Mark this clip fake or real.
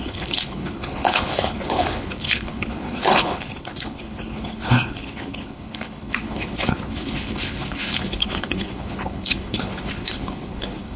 fake